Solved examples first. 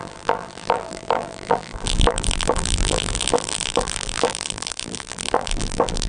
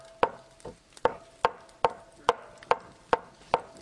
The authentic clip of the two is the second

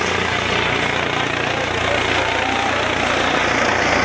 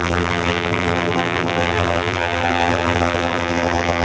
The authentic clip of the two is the first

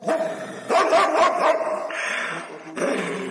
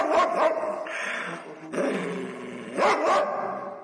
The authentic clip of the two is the second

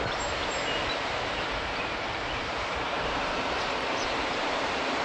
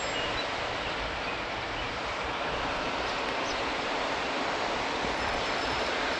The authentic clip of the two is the second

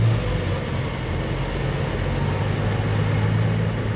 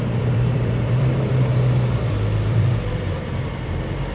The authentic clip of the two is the first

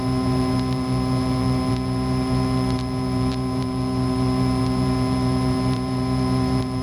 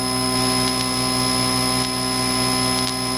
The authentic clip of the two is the second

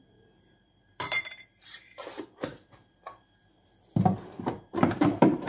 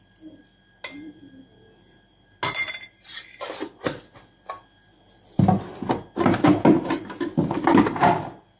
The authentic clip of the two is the second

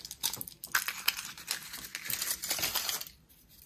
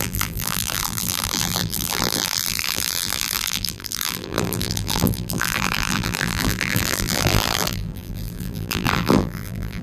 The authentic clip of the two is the first